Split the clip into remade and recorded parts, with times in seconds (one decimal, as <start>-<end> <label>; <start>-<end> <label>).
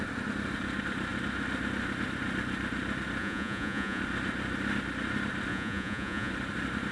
0.0-3.2 recorded; 3.2-4.0 remade; 4.0-5.5 recorded; 5.5-6.3 remade; 6.3-6.9 recorded